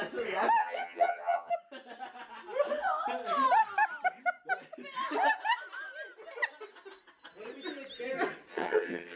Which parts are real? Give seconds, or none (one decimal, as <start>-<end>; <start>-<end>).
0.0-0.6; 1.5-8.5